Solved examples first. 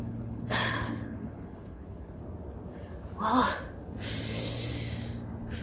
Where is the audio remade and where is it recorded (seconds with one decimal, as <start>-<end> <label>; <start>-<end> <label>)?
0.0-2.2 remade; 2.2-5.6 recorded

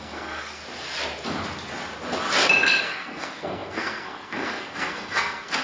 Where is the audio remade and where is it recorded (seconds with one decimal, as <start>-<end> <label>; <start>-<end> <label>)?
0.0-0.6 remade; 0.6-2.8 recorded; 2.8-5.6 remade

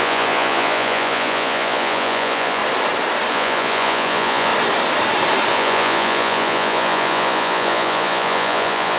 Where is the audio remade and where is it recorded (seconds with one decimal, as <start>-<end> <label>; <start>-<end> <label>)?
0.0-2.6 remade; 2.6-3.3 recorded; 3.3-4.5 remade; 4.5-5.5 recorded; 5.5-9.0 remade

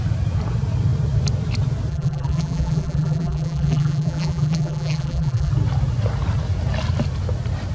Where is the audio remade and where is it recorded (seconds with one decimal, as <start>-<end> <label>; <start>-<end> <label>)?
0.0-1.9 recorded; 1.9-5.5 remade; 5.5-7.7 recorded